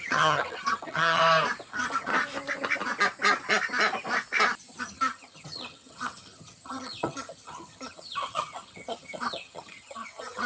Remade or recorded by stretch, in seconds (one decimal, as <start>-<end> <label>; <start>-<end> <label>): 0.0-1.2 remade; 1.2-1.7 recorded; 1.7-2.1 remade; 2.1-4.8 recorded; 4.8-10.5 remade